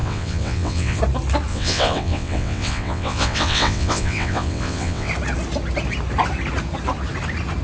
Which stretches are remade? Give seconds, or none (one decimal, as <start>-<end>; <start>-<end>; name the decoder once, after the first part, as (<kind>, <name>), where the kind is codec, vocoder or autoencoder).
0.0-1.0 (vocoder, WaveNeXt); 1.5-5.1

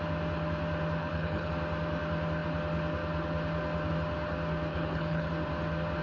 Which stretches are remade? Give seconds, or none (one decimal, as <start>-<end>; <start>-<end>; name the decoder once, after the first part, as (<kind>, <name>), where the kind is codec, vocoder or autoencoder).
1.0-1.5 (codec, HILCodec); 4.7-5.3

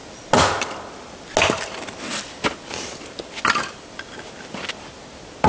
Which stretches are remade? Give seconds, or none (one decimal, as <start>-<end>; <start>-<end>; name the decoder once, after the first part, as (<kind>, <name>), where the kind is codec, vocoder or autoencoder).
none

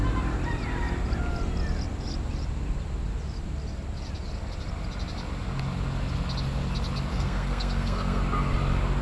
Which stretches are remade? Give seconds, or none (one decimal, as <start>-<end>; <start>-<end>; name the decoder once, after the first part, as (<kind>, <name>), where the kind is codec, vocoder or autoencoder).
7.1-8.2 (codec, SNAC)

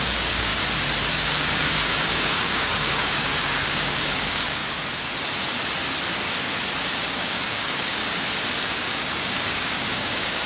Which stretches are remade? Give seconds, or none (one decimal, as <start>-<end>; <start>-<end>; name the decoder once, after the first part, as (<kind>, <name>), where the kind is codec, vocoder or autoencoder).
0.0-0.5 (codec, DAC); 1.1-4.6; 6.8-8.0; 8.6-10.5

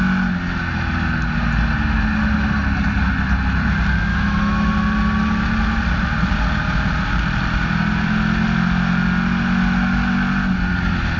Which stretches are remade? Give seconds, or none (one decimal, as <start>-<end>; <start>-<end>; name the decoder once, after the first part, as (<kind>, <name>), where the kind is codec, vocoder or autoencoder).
4.1-4.7 (autoencoder, DAC-VAE)

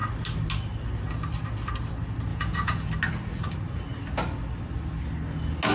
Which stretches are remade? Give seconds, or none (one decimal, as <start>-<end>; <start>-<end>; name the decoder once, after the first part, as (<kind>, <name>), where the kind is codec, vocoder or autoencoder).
2.3-2.9 (vocoder, Vocos)

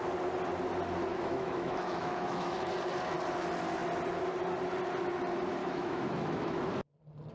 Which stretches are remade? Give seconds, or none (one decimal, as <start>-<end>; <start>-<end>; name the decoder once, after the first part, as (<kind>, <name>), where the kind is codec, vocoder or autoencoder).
1.1-2.7 (autoencoder, DAC-VAE); 5.6-6.7